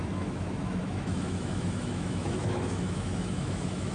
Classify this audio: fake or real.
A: fake